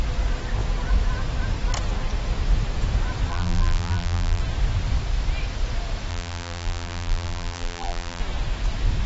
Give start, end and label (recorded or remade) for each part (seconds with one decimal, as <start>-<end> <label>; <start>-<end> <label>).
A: 0.0-3.3 recorded; 3.3-4.4 remade; 4.4-6.1 recorded; 6.1-8.2 remade; 8.2-9.1 recorded